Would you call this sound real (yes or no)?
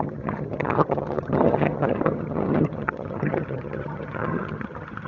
no